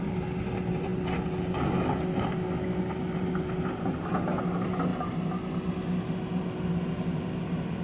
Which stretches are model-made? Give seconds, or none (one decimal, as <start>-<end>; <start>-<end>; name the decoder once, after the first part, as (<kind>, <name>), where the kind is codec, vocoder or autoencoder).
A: none